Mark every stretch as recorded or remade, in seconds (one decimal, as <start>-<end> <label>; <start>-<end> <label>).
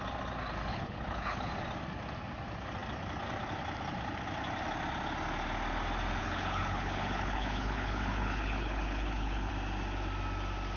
0.0-0.7 recorded; 0.7-1.5 remade; 1.5-6.2 recorded; 6.2-9.5 remade; 9.5-10.8 recorded